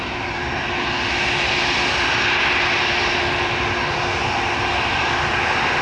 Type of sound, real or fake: real